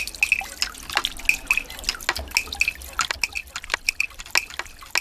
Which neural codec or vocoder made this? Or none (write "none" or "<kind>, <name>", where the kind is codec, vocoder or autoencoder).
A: none